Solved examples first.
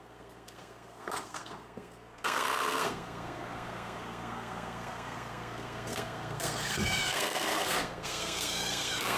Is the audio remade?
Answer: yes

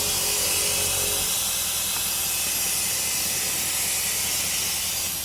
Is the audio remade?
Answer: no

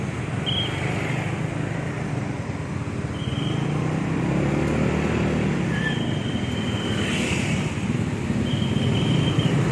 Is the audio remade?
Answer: no